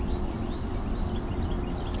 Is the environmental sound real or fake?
real